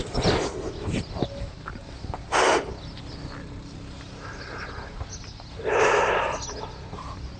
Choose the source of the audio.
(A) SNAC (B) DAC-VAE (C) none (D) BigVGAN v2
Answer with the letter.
C